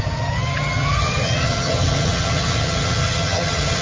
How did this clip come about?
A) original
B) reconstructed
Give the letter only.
B